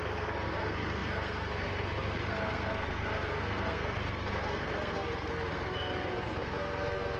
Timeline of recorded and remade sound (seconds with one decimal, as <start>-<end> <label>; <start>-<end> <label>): 0.0-7.2 remade